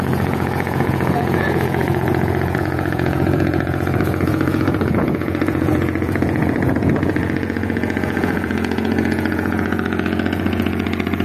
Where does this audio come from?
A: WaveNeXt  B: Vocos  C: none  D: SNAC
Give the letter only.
B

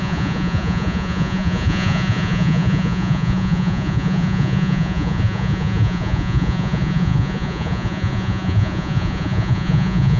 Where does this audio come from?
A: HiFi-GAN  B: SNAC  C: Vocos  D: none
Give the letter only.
C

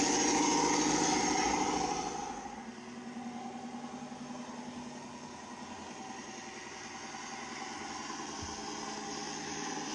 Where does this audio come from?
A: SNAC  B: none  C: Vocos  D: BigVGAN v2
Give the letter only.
B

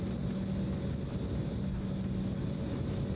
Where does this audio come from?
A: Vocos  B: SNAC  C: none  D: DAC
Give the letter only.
C